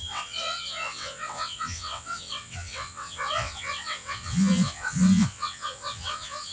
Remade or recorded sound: remade